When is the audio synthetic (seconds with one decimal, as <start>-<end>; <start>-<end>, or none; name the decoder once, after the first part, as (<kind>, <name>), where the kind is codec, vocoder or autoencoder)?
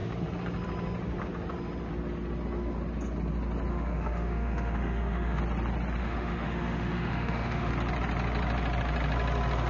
3.7-5.4 (autoencoder, DAC-VAE); 6.0-7.7